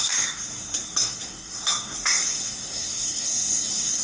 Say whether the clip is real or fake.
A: fake